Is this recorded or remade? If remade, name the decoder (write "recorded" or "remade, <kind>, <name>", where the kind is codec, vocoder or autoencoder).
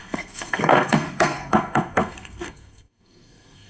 remade, codec, SNAC